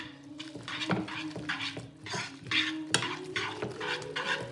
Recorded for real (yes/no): yes